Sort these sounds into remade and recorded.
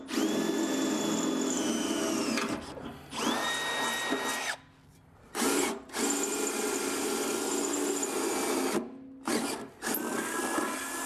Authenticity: recorded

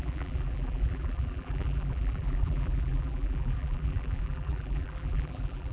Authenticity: remade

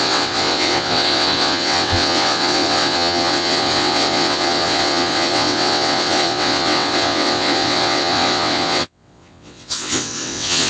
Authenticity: remade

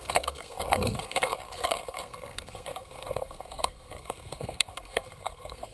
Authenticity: remade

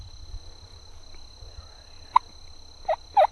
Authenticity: recorded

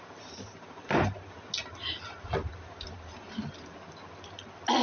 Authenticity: recorded